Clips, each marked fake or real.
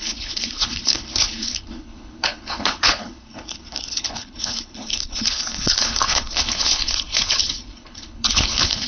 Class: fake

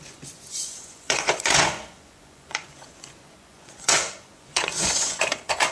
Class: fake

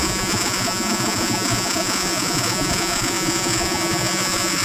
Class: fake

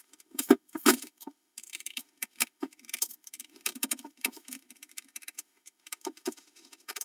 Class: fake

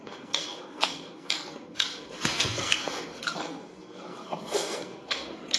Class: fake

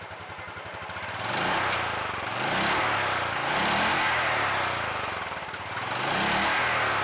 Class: real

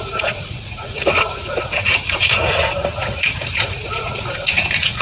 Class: fake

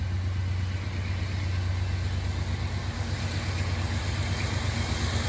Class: real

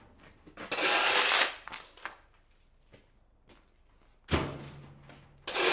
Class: real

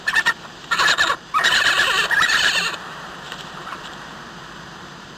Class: fake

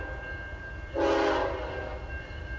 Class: real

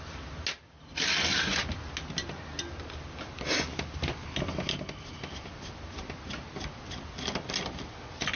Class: real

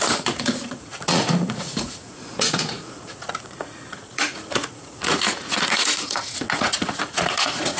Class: fake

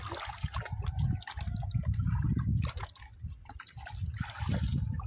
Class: real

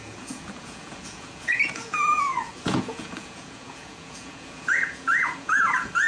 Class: fake